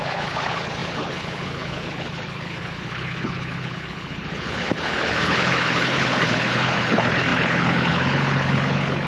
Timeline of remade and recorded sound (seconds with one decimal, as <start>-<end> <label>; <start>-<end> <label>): 0.0-9.1 remade